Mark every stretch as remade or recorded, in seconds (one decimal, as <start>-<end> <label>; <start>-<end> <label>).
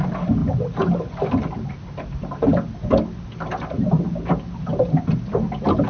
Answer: 0.0-5.9 recorded